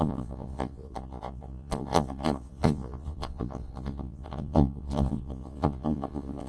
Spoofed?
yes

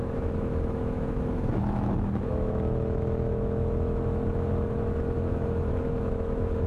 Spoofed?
yes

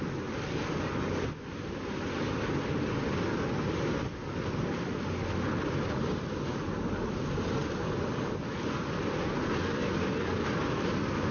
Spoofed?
no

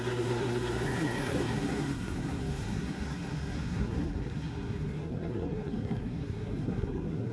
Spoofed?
yes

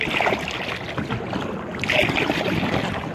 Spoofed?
no